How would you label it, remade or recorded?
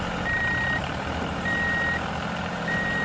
remade